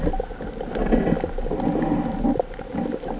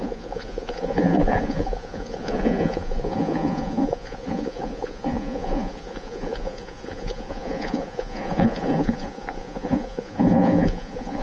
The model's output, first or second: second